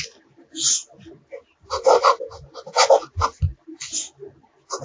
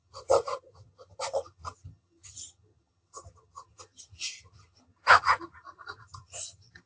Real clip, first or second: first